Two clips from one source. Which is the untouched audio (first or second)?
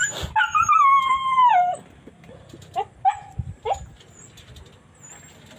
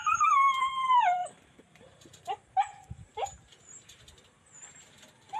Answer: first